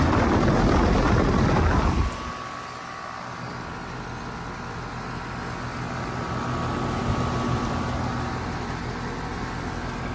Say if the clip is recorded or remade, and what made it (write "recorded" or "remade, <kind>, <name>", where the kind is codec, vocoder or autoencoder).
recorded